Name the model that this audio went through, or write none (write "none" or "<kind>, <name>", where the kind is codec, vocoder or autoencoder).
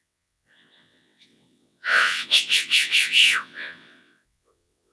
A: vocoder, WaveNeXt